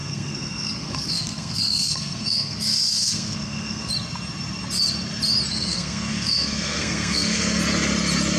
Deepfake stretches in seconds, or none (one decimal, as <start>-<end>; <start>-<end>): 0.0-3.9; 5.5-7.6